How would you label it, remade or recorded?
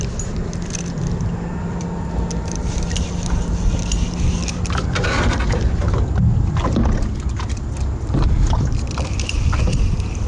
recorded